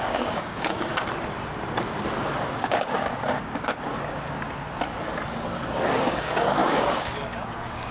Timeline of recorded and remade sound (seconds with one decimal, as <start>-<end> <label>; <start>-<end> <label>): 0.0-0.9 remade; 0.9-2.6 recorded; 2.6-3.9 remade; 3.9-6.0 recorded; 6.0-7.9 remade